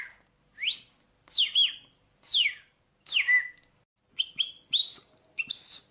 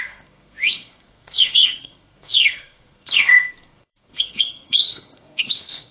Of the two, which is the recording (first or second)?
first